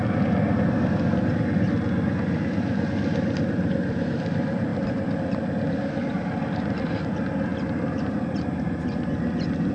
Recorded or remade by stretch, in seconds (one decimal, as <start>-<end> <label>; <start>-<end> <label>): 0.0-7.5 recorded; 7.5-9.1 remade; 9.1-9.7 recorded